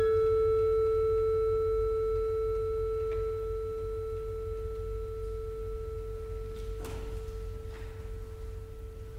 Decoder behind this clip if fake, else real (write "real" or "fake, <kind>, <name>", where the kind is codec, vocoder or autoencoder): real